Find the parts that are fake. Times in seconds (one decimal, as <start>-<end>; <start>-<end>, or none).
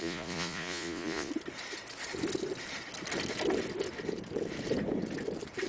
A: 0.0-1.3